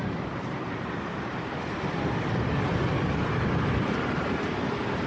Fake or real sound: real